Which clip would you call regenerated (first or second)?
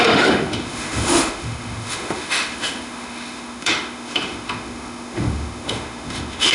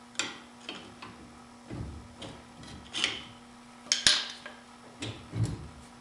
first